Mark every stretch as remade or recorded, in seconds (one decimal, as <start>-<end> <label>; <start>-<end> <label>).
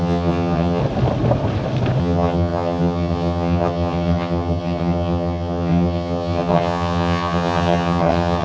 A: 0.0-0.8 remade; 0.8-2.0 recorded; 2.0-8.4 remade